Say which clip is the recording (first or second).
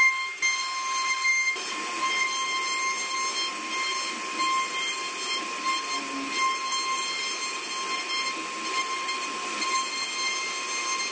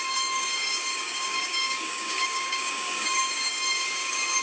first